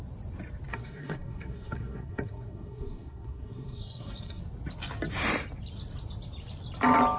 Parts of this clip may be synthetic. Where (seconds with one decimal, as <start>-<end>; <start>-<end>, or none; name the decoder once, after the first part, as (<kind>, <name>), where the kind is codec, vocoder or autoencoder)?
0.7-4.4 (codec, SNAC)